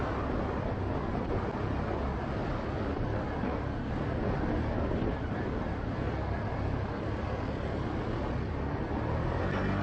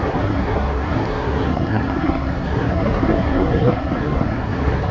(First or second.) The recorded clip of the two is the first